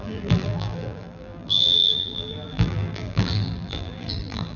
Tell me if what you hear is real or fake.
fake